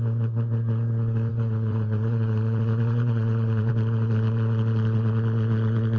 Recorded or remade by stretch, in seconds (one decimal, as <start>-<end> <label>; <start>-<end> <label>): 0.0-1.3 recorded; 1.3-3.7 remade; 3.7-6.0 recorded